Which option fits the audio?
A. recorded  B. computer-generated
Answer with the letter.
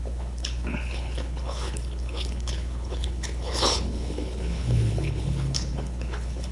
B